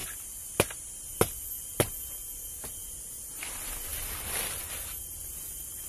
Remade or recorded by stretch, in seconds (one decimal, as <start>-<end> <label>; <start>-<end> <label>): 0.0-5.9 recorded